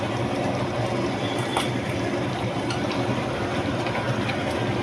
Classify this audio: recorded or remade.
recorded